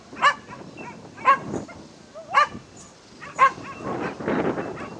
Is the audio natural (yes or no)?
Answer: yes